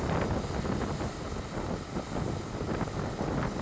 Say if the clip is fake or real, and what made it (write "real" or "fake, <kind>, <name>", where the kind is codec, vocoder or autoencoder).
real